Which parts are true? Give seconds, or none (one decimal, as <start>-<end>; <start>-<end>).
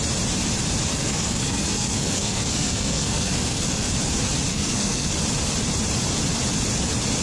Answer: 0.0-0.9; 3.9-4.5; 5.1-7.2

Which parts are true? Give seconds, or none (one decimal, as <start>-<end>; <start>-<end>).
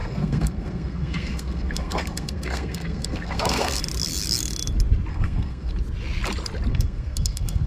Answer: 3.8-5.1; 5.7-6.7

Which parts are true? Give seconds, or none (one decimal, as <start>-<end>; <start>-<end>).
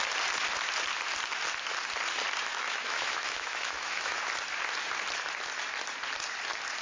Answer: 0.0-2.5; 4.2-6.8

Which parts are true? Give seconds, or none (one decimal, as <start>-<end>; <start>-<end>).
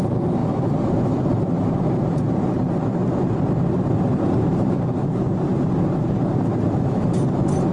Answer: 3.0-4.1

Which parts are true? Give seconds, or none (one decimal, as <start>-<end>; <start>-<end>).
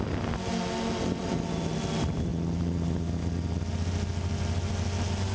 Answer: 0.0-5.3